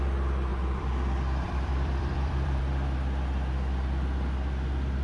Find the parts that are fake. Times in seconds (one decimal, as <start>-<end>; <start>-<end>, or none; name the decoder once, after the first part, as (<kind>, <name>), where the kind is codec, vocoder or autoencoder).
0.5-2.6 (vocoder, BigVGAN v2)